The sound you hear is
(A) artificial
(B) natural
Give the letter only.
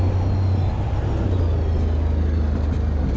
B